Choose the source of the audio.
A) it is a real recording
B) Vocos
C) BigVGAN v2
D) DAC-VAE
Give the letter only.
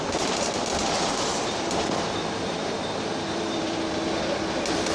C